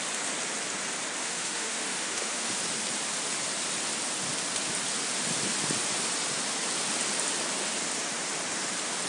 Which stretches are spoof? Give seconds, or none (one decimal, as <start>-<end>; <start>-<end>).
1.2-2.6

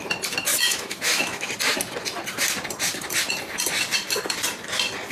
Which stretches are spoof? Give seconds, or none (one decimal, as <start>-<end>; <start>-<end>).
0.5-1.5

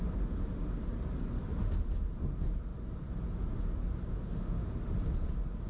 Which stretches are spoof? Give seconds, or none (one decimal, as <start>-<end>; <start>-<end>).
4.1-4.7

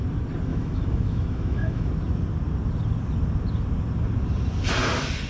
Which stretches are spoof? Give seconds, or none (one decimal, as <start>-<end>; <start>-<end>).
0.5-1.9

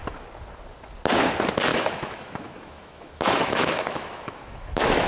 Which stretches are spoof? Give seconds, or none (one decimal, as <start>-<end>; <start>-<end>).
1.7-5.1